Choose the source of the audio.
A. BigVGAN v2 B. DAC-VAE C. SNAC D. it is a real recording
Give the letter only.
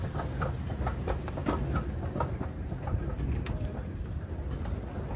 D